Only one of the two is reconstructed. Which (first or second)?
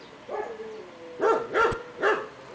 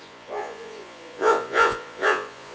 second